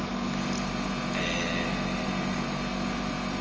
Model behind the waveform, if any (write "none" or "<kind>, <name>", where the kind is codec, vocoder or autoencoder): none